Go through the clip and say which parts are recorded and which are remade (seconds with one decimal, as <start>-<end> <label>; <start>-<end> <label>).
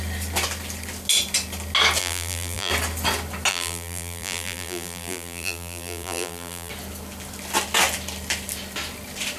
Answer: 0.0-2.0 recorded; 2.0-2.7 remade; 2.7-3.5 recorded; 3.5-6.7 remade; 6.7-9.4 recorded